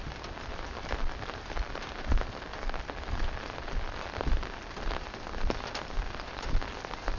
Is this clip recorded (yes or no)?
yes